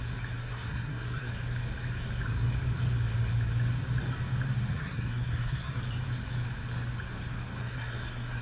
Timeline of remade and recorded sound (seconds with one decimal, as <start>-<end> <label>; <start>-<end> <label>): 0.0-0.4 recorded; 0.4-1.3 remade; 1.3-4.7 recorded; 4.7-5.8 remade; 5.8-7.6 recorded; 7.6-8.4 remade